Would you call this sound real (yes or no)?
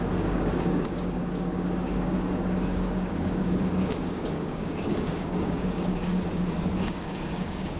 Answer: no